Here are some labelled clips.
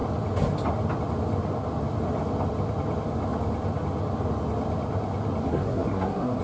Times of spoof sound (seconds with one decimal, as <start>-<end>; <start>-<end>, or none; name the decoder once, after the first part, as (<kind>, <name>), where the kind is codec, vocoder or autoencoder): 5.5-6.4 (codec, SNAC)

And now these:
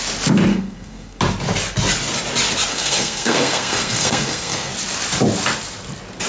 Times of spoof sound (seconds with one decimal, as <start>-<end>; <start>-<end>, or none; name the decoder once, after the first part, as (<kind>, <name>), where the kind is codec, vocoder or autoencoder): 0.5-1.2 (codec, SNAC); 2.7-4.7

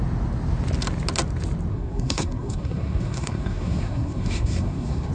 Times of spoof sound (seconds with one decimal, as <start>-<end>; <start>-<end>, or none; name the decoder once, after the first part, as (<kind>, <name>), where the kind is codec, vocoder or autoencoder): 1.7-5.1 (codec, SNAC)

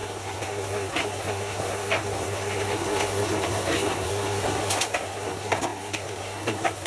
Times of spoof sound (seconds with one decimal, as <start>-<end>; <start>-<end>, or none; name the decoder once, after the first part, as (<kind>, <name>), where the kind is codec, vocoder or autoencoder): 0.0-6.9 (codec, SNAC)